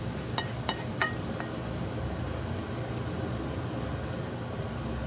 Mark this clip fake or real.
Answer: real